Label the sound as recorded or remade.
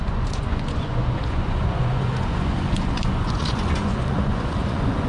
remade